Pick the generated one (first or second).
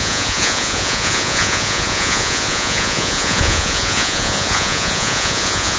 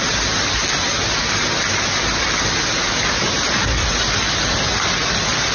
first